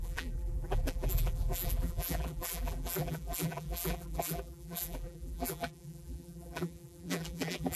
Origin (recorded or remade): remade